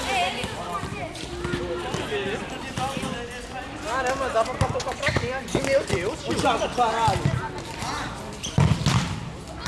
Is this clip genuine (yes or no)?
yes